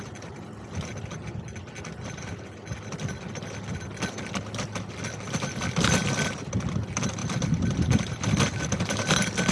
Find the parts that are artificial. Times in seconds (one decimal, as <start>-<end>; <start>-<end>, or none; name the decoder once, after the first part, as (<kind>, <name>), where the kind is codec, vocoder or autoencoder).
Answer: 7.2-8.8 (vocoder, BigVGAN v2)